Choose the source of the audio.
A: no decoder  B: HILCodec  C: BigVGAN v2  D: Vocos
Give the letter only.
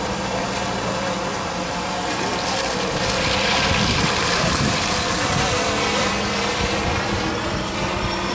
C